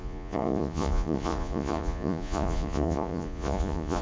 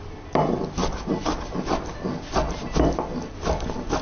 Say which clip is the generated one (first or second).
first